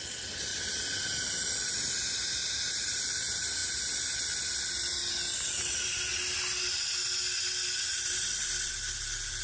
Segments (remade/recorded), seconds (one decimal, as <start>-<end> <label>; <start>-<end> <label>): 0.0-2.4 recorded; 2.4-3.0 remade; 3.0-9.4 recorded